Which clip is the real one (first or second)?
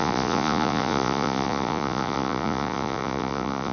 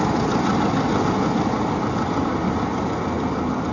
second